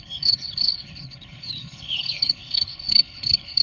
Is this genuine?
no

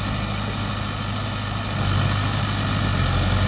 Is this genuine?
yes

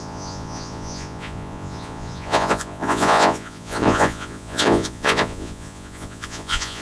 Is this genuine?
no